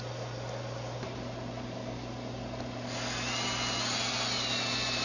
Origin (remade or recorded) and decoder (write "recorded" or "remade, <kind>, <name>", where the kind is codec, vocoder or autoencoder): recorded